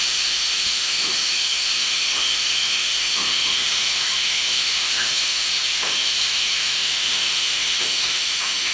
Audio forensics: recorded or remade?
remade